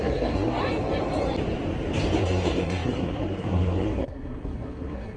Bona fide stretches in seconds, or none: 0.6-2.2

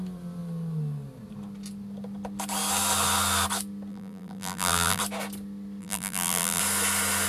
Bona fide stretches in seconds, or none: 0.0-3.9; 5.0-5.8; 6.6-7.3

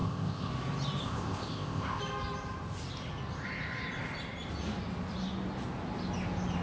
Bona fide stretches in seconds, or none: 0.5-1.0; 2.0-6.6

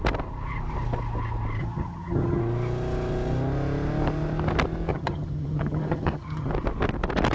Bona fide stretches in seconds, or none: 0.0-1.6; 2.4-4.9; 6.5-7.3

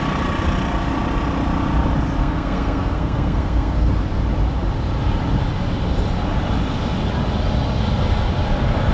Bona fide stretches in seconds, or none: 0.0-2.2; 3.9-8.9

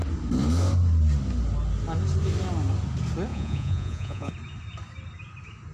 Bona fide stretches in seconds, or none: 0.0-3.3; 4.3-5.7

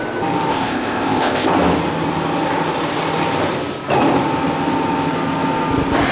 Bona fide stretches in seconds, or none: 0.0-0.5; 1.5-6.1